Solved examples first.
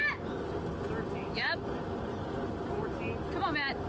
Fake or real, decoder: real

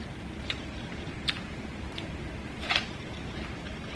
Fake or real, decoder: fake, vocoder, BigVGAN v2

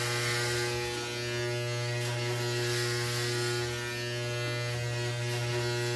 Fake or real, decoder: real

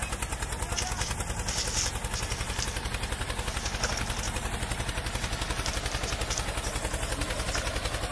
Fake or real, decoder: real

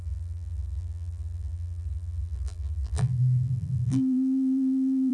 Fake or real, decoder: fake, vocoder, BigVGAN v2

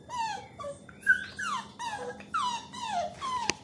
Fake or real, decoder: real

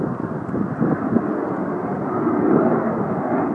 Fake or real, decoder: real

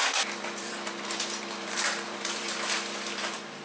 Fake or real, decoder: fake, vocoder, BigVGAN v2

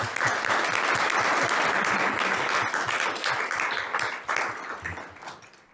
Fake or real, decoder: real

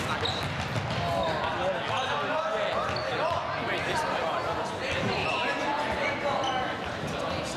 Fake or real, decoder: real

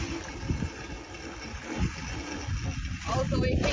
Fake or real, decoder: real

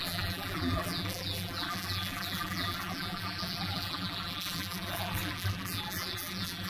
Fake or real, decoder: fake, vocoder, BigVGAN v2